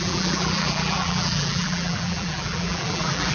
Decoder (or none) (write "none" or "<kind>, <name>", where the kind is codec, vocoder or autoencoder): vocoder, BigVGAN v2